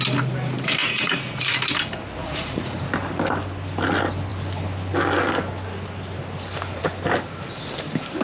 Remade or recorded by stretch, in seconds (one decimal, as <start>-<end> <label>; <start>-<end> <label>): 0.0-0.8 recorded; 0.8-1.5 remade; 1.5-2.2 recorded; 2.2-2.9 remade; 2.9-8.2 recorded